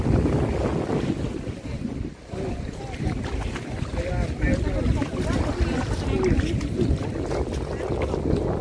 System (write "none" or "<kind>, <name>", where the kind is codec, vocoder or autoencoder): none